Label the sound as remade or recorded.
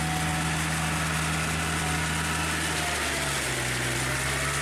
recorded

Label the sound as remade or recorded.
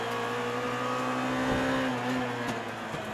recorded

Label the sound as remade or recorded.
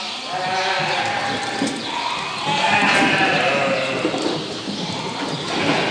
recorded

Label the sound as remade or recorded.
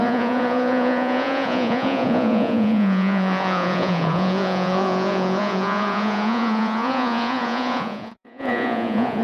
remade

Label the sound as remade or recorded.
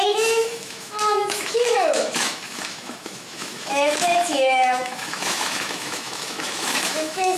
remade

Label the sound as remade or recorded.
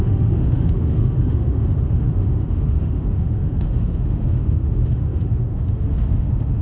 remade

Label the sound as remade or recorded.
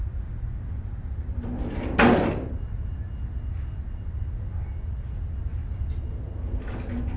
recorded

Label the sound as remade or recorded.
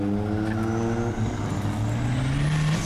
recorded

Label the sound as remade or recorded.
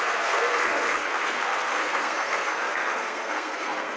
remade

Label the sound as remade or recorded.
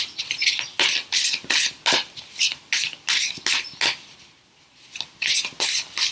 recorded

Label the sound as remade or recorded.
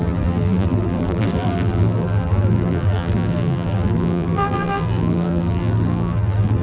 remade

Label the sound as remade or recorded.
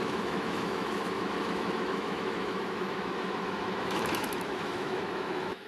remade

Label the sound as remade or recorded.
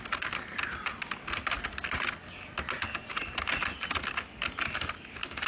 recorded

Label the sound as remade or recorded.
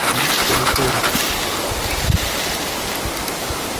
recorded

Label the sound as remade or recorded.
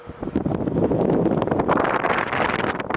recorded